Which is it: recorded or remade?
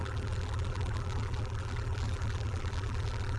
remade